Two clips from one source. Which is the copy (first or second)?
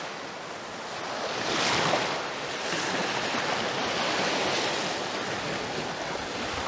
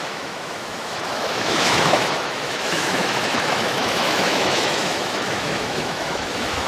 second